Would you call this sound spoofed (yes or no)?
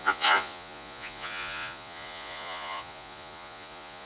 yes